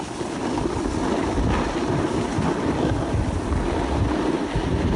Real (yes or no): yes